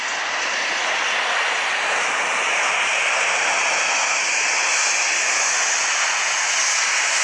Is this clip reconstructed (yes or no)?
no